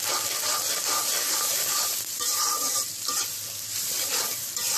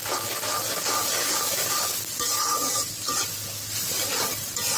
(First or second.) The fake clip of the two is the first